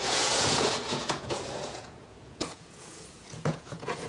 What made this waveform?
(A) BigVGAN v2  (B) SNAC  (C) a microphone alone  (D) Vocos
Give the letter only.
D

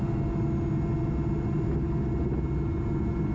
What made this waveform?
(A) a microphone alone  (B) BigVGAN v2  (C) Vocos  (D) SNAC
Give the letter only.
A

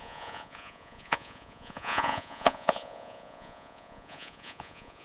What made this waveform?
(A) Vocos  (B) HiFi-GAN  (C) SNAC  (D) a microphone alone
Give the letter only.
A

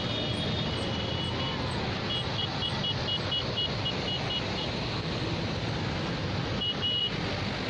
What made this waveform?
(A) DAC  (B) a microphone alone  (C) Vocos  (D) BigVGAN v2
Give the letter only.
B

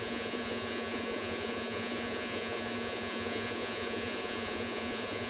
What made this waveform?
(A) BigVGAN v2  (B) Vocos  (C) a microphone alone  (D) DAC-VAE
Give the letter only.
B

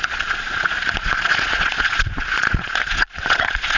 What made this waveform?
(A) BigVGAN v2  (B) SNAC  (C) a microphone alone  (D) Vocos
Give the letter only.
D